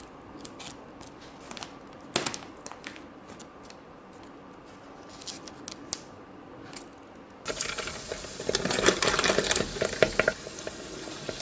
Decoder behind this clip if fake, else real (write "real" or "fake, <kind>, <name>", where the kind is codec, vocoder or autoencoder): real